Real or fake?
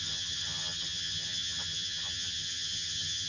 fake